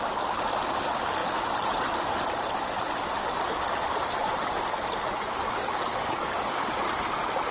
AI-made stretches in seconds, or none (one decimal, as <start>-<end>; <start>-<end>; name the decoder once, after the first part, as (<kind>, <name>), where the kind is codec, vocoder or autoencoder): 5.3-6.7 (codec, DAC)